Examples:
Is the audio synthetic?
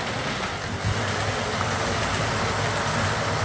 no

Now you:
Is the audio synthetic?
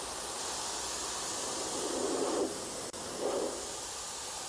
no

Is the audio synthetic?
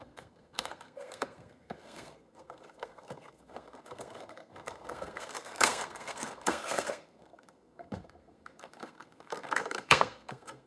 yes